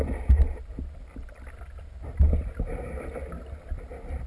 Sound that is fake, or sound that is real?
real